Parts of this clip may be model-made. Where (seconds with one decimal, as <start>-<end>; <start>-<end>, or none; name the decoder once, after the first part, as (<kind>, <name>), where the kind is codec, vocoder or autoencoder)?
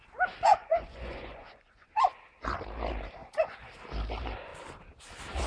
0.5-2.1 (vocoder, Vocos); 3.2-3.7